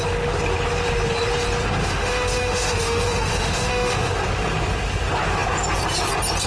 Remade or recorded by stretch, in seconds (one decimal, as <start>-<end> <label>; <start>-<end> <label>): 0.0-1.8 recorded; 1.8-4.1 remade; 4.1-6.5 recorded